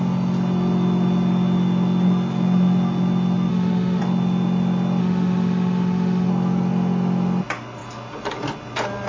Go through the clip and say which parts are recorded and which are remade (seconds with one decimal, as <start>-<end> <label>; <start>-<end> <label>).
0.0-3.5 recorded; 3.5-4.0 remade; 4.0-5.0 recorded; 5.0-6.3 remade; 6.3-9.1 recorded